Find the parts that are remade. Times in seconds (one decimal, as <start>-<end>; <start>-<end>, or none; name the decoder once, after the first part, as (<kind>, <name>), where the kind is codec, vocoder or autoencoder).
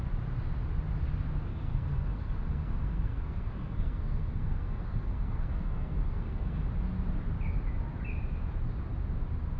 1.5-6.7 (codec, SNAC)